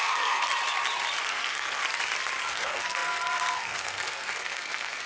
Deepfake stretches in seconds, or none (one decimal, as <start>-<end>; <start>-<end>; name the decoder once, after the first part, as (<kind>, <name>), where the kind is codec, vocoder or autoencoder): 0.0-0.5 (codec, SNAC); 1.2-1.8; 2.5-5.1